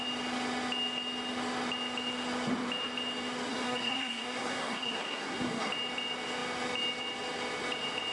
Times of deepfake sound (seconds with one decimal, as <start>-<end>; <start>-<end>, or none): 3.5-5.7